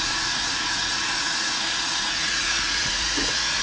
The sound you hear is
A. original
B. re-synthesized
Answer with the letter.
B